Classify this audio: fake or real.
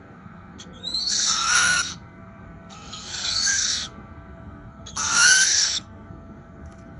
fake